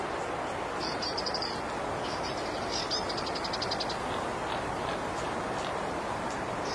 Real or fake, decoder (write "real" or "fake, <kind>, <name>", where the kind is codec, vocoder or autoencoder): real